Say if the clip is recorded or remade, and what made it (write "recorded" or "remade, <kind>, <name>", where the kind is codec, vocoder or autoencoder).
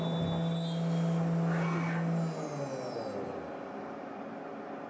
recorded